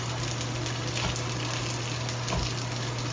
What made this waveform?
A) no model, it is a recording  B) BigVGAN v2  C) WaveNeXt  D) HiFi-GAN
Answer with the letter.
A